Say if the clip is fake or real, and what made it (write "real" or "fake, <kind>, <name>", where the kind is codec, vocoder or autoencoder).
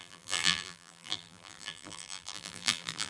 fake, vocoder, BigVGAN v2